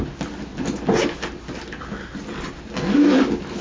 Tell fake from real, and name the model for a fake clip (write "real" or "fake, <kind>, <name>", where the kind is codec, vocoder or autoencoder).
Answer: real